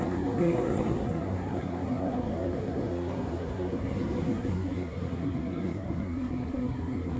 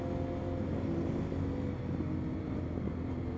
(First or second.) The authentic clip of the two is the second